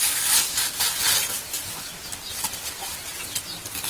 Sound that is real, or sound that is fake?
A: real